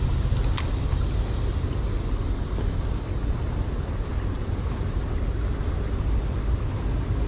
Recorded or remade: recorded